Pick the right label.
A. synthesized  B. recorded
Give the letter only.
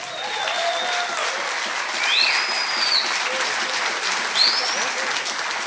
B